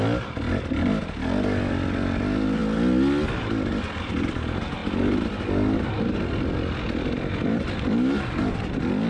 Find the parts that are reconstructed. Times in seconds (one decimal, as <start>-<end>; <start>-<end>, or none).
none